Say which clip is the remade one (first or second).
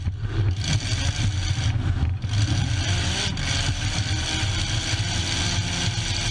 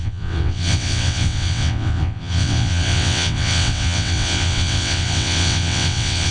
second